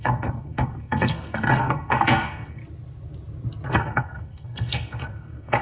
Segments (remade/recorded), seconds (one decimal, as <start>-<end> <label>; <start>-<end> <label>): 0.0-2.6 remade; 2.6-3.7 recorded; 3.7-5.6 remade